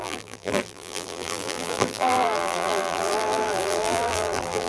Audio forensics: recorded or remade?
remade